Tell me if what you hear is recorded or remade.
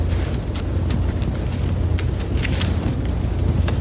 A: recorded